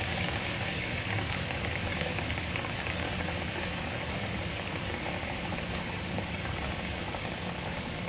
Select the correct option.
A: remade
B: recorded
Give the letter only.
A